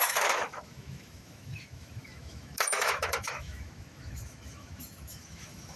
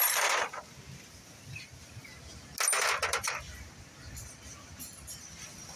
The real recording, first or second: second